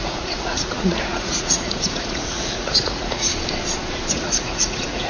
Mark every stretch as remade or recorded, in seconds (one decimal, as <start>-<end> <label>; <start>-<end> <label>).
0.0-3.3 remade; 3.3-4.1 recorded; 4.1-5.1 remade